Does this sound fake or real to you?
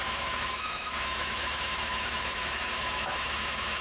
fake